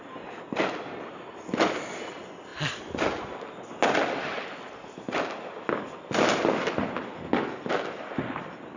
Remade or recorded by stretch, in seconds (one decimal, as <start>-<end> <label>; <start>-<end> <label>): 0.0-8.8 recorded